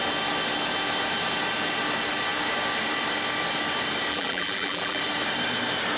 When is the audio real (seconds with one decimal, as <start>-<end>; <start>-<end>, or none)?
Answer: 0.0-4.1; 5.0-6.0